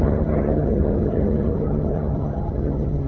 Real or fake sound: fake